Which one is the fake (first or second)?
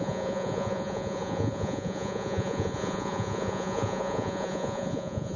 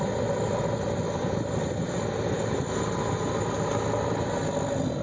first